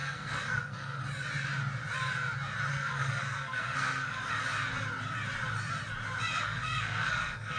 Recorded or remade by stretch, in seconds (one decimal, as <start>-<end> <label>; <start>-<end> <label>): 0.0-1.0 remade; 1.0-2.7 recorded; 2.7-4.2 remade; 4.2-6.4 recorded; 6.4-7.6 remade